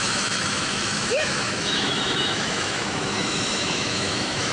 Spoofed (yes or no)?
yes